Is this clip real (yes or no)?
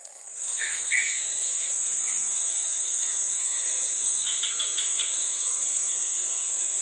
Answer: no